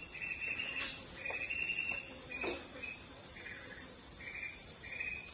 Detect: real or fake real